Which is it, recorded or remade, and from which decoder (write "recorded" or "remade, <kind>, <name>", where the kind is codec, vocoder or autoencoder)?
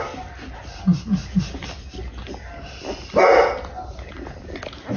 recorded